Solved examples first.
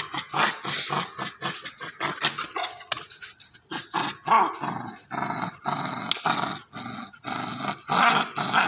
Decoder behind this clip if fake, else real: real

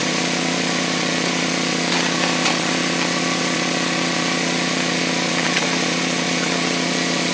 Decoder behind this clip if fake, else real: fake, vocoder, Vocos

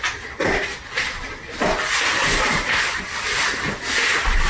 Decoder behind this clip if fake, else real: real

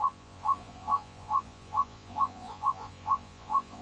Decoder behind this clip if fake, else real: fake, vocoder, Vocos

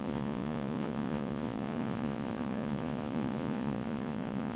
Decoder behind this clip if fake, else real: fake, vocoder, Vocos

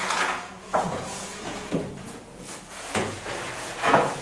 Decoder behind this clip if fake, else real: fake, vocoder, Vocos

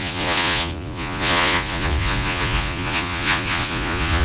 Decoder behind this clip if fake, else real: fake, vocoder, Vocos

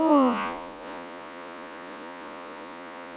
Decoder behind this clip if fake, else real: fake, vocoder, Vocos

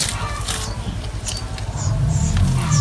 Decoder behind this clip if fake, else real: real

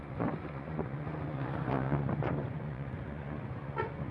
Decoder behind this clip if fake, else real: fake, vocoder, Vocos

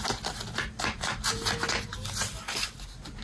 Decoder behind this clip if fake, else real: real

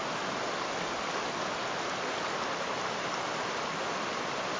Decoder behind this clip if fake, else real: real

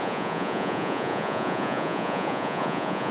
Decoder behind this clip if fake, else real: fake, vocoder, Vocos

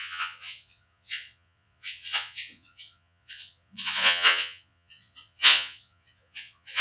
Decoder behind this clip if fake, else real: fake, vocoder, Vocos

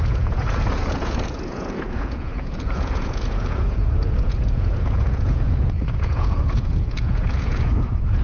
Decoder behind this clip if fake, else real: fake, vocoder, Vocos